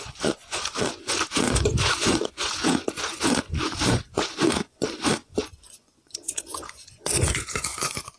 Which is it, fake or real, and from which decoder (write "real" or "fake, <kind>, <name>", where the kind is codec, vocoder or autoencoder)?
fake, vocoder, Vocos